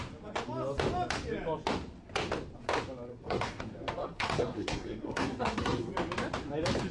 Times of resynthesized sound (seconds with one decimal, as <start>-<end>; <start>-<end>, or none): 3.1-3.6; 4.0-5.9